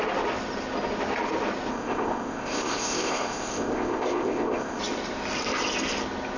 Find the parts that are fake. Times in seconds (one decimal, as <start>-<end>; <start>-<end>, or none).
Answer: 1.7-4.8